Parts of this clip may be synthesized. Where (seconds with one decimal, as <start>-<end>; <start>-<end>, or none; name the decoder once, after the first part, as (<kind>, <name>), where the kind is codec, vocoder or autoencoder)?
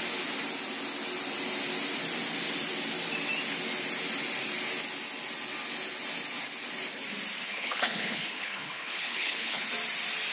7.4-9.7 (codec, HILCodec)